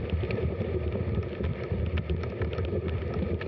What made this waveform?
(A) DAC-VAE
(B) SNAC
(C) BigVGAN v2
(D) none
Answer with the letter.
D